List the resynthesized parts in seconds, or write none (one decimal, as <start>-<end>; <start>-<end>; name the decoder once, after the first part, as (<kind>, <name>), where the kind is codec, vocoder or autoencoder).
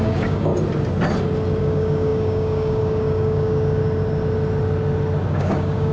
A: 0.0-0.5 (codec, DAC); 1.6-3.8; 5.3-5.9